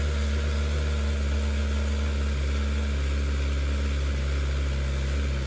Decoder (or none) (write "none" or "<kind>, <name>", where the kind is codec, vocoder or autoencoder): none